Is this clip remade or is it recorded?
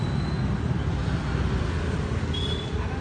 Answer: recorded